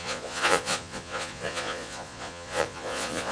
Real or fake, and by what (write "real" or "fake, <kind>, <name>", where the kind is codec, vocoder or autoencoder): fake, vocoder, Vocos